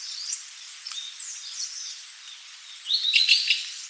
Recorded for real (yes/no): yes